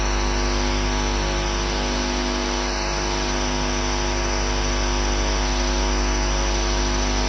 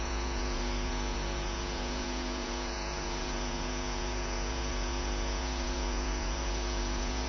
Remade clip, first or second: second